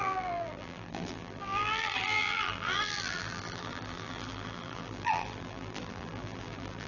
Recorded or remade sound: remade